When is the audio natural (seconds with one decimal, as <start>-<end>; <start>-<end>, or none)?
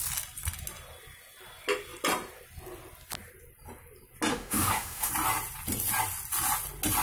0.0-4.3; 5.1-7.0